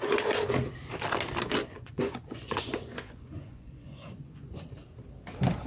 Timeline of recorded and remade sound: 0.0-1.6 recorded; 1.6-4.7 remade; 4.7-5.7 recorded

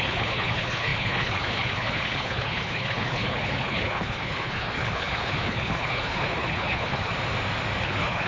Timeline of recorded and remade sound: 0.0-7.1 remade; 7.1-7.8 recorded; 7.8-8.3 remade

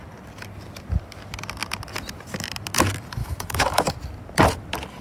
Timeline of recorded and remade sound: 0.0-3.2 recorded; 3.2-3.9 remade; 3.9-5.0 recorded

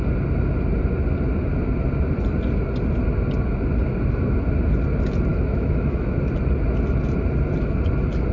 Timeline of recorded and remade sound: 0.0-5.3 recorded; 5.3-6.1 remade; 6.1-8.3 recorded

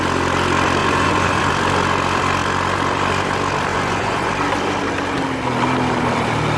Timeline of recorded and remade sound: 0.0-0.8 recorded; 0.8-1.5 remade; 1.5-3.7 recorded; 3.7-4.3 remade; 4.3-6.6 recorded

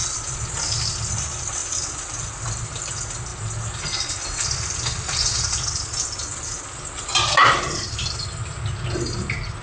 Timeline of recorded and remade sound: 0.0-0.5 remade; 0.5-9.6 recorded